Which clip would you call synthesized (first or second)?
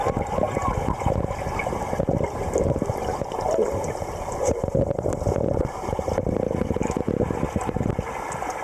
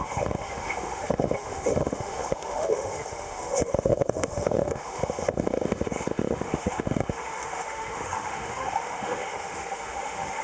second